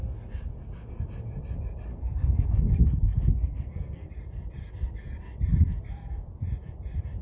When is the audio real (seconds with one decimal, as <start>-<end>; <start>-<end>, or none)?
0.0-1.9; 4.1-7.2